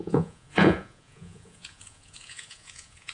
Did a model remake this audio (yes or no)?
yes